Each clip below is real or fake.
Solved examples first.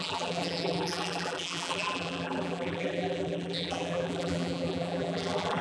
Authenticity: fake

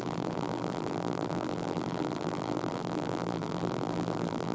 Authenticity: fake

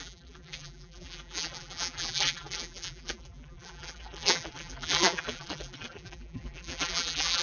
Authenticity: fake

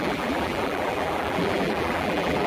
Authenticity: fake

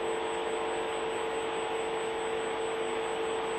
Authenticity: real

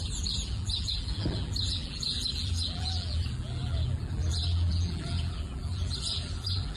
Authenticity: fake